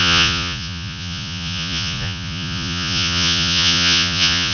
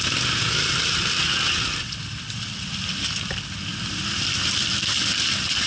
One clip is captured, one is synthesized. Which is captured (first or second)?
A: second